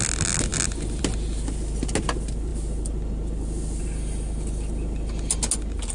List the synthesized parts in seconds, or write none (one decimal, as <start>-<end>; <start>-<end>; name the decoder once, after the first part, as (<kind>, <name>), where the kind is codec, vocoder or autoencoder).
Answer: none